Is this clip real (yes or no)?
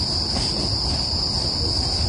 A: yes